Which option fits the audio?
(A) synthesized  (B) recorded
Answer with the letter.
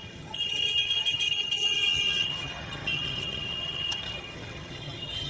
A